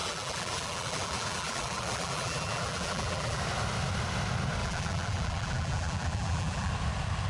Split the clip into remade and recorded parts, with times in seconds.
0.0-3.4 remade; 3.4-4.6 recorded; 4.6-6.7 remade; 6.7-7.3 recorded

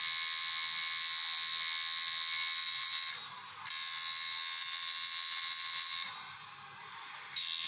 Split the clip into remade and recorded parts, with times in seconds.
0.0-2.6 recorded; 2.6-3.6 remade; 3.6-4.6 recorded; 4.6-6.8 remade; 6.8-7.7 recorded

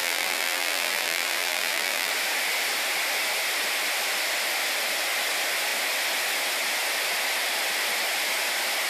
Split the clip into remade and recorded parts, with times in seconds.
0.0-2.1 remade; 2.1-8.9 recorded

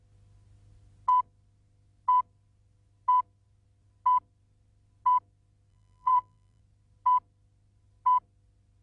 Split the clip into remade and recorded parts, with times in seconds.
0.0-5.7 recorded; 5.7-6.6 remade; 6.6-8.8 recorded

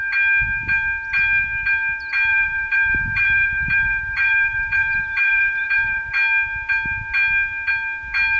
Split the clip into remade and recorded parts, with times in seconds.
0.0-2.3 recorded; 2.3-6.1 remade; 6.1-8.4 recorded

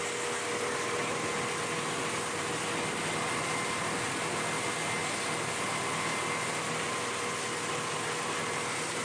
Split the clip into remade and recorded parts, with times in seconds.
0.0-9.0 recorded